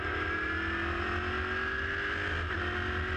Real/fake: real